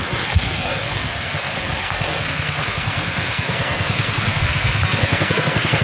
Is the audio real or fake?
fake